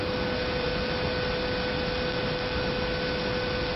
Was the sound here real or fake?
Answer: real